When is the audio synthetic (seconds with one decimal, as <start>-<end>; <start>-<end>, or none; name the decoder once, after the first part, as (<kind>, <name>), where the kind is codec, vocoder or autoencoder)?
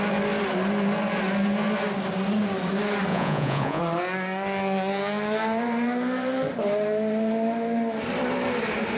3.1-3.8 (vocoder, Vocos)